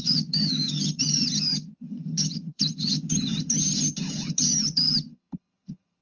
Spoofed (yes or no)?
yes